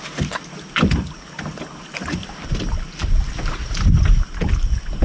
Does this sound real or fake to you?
real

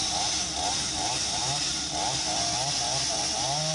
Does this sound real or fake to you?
real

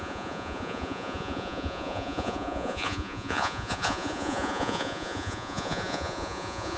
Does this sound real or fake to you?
fake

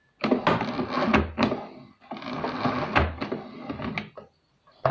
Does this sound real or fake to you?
real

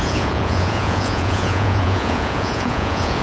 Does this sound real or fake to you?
fake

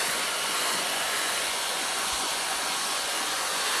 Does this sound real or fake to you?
fake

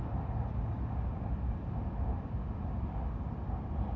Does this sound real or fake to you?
real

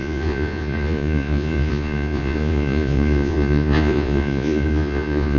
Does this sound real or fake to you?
fake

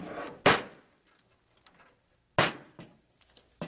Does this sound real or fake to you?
real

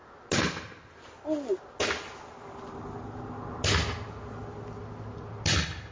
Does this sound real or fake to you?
real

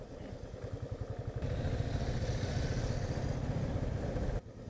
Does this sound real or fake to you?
real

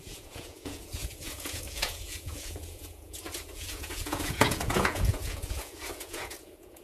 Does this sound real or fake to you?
fake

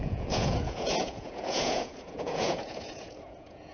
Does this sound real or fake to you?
fake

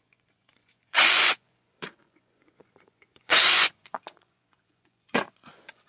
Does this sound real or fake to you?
fake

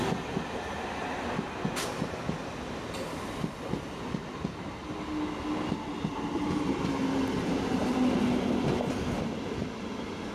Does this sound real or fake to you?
real